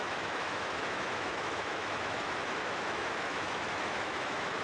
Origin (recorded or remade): remade